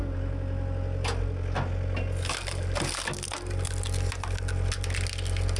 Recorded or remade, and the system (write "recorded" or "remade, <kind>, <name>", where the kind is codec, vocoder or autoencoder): recorded